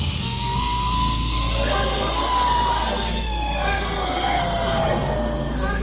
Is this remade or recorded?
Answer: remade